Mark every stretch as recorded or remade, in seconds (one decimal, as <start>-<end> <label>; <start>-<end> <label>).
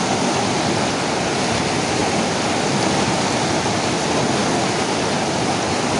0.0-2.0 recorded; 2.0-3.6 remade; 3.6-6.0 recorded